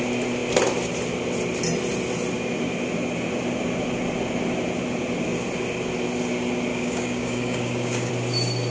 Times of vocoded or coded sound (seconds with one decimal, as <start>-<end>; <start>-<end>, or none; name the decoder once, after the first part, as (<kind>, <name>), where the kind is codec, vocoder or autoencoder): 6.7-8.1 (codec, DAC)